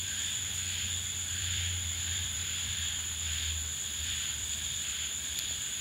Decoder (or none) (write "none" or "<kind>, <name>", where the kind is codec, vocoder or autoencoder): vocoder, BigVGAN v2